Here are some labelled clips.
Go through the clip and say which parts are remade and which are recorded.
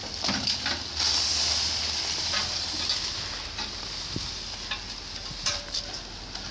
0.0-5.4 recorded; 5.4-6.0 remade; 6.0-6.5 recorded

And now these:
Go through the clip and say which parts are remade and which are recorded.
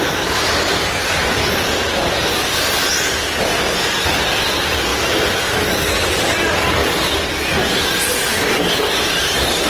0.0-4.9 recorded; 4.9-5.9 remade; 5.9-9.7 recorded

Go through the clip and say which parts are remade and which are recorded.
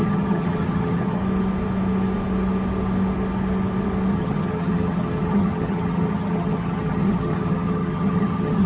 0.0-1.2 remade; 1.2-4.1 recorded; 4.1-8.7 remade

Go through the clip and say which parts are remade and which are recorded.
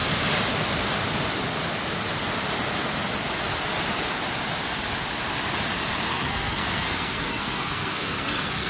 0.0-6.1 recorded; 6.1-8.7 remade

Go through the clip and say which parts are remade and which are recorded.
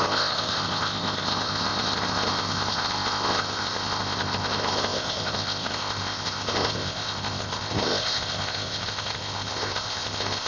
0.0-10.5 remade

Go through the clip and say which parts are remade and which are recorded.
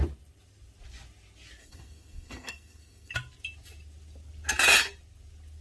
0.0-1.6 recorded; 1.6-3.1 remade; 3.1-5.6 recorded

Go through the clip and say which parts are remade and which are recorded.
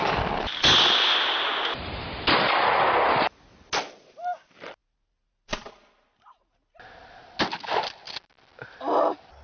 0.0-9.4 recorded